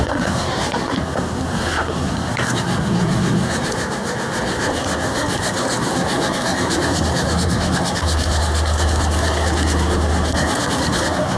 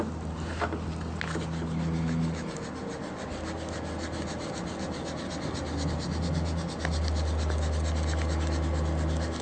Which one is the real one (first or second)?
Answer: second